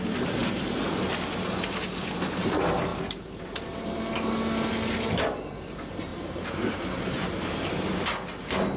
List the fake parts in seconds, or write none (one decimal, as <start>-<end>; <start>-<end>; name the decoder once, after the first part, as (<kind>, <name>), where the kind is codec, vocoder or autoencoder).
2.9-4.0 (vocoder, BigVGAN v2); 6.1-7.3

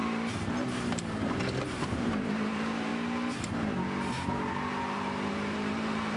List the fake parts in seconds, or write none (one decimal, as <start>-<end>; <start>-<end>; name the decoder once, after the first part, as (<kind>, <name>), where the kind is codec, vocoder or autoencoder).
1.6-2.9 (vocoder, BigVGAN v2); 5.3-6.2

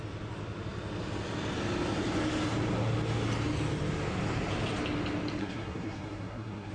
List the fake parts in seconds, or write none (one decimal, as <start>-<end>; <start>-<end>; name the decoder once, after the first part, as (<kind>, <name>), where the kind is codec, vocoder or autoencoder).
5.4-6.7 (codec, SNAC)

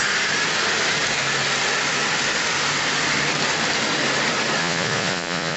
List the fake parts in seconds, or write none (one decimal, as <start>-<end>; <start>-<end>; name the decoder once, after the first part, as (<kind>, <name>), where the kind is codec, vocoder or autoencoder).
4.6-5.6 (vocoder, Vocos)

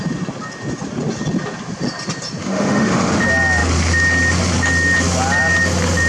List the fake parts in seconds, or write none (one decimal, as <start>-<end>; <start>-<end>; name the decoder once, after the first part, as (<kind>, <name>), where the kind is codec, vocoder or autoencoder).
2.4-3.1 (autoencoder, DAC-VAE)

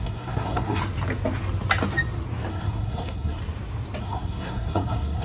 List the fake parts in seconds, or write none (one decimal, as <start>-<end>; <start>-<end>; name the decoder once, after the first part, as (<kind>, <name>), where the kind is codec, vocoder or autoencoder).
0.0-0.8 (codec, SNAC); 2.5-3.4; 4.0-5.2

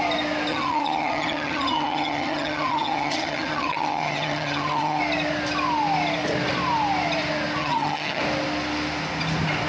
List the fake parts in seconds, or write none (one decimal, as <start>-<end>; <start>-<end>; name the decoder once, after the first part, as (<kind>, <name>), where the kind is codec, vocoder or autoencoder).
0.5-5.0 (vocoder, HiFi-GAN); 7.6-8.2